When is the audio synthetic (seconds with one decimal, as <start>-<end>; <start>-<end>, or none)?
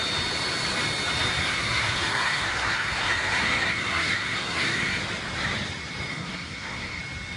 1.4-5.0; 6.1-7.0